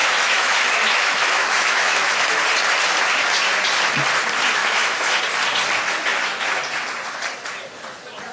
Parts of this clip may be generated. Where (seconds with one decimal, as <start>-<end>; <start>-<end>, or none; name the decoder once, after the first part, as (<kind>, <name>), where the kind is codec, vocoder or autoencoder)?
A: 0.0-2.2 (autoencoder, DAC-VAE); 4.6-5.2